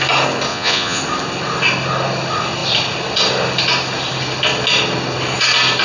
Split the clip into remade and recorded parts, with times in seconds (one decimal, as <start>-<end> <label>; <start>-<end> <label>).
0.0-0.5 recorded; 0.5-1.0 remade; 1.0-5.8 recorded